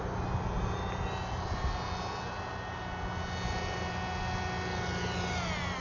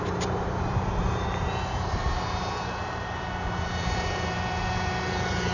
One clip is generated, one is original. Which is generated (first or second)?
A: second